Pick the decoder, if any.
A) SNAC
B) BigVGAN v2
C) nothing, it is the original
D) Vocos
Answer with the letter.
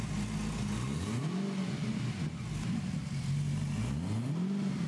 C